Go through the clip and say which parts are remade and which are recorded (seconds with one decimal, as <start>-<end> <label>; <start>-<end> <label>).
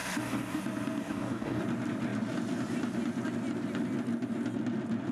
0.0-0.6 remade; 0.6-1.0 recorded; 1.0-1.6 remade; 1.6-5.1 recorded